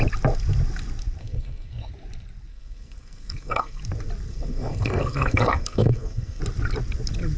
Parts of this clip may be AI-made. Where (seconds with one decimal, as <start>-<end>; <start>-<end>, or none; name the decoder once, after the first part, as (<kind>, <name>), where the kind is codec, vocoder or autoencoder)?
1.2-1.9 (codec, SNAC); 2.5-3.8; 4.3-6.4